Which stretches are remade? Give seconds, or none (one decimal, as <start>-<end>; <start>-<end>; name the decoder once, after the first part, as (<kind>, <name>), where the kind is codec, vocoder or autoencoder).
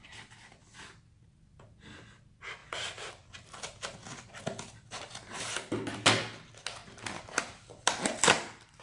none